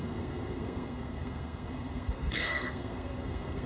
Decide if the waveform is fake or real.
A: fake